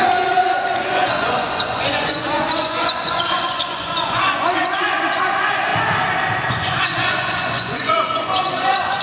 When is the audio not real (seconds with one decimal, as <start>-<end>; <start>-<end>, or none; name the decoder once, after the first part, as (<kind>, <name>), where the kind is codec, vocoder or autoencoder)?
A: 0.0-5.7 (vocoder, Vocos); 6.5-9.0